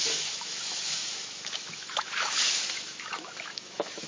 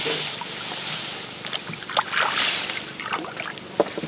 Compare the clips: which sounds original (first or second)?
second